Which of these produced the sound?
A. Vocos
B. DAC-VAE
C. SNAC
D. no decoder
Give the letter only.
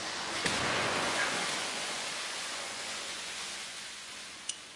A